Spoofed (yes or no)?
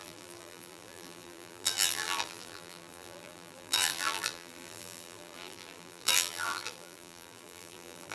yes